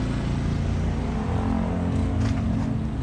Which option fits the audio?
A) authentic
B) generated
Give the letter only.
A